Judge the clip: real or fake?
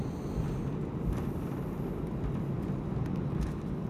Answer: real